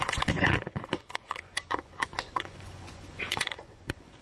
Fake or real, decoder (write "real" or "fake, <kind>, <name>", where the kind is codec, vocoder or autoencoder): fake, vocoder, Vocos